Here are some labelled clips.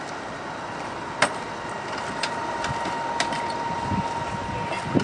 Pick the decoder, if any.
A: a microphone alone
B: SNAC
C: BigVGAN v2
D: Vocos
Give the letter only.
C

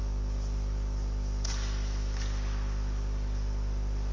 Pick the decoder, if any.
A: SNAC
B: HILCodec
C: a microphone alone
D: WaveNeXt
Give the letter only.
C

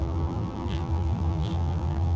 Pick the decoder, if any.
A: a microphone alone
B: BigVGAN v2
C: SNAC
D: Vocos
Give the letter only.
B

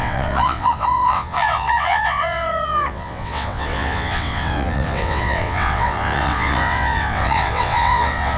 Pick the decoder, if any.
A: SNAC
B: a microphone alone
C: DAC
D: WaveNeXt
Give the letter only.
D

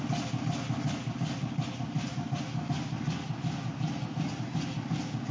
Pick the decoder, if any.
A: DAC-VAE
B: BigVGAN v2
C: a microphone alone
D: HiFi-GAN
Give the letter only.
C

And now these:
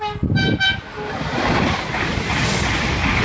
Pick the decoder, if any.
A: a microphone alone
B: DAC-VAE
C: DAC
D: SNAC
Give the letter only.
A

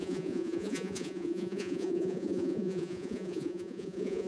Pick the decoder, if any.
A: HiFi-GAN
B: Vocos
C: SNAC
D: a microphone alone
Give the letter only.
B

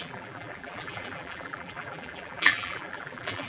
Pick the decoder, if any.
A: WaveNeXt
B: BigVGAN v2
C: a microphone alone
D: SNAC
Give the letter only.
B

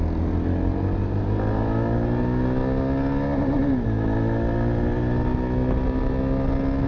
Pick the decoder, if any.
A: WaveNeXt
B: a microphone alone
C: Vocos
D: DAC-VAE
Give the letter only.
B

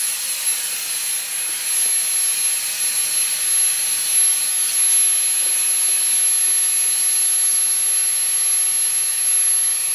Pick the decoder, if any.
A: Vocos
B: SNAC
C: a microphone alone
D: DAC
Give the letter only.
C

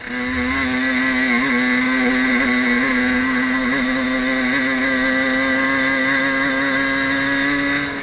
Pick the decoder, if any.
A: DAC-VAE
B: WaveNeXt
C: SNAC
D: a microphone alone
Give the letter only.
D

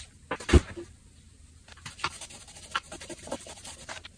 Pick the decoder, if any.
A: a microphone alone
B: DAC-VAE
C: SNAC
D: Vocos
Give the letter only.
A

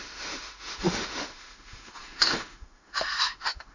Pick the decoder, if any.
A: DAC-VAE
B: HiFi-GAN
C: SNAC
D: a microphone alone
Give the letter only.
A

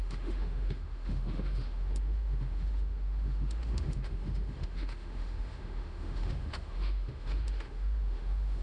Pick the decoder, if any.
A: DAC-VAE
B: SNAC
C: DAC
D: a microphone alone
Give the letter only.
A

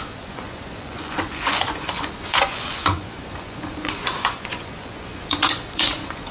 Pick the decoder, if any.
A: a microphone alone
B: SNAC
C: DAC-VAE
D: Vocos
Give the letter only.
D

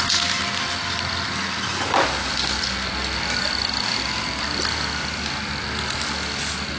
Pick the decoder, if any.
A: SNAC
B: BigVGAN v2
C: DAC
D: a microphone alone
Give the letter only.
D